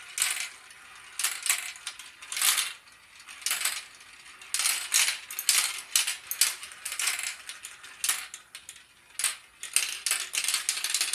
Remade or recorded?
recorded